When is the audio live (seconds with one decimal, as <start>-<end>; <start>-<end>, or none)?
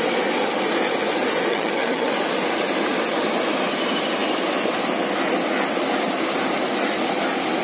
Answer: 0.0-1.5; 2.1-7.6